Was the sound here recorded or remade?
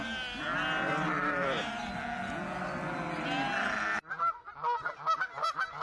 recorded